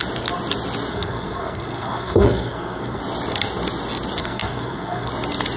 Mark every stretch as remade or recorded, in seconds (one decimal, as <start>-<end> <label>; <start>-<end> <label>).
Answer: 0.0-0.9 recorded; 0.9-3.0 remade; 3.0-4.2 recorded; 4.2-5.1 remade; 5.1-5.6 recorded